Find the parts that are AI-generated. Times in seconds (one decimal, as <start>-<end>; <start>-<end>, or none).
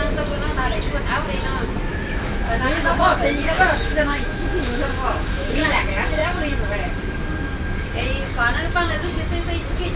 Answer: 1.9-5.8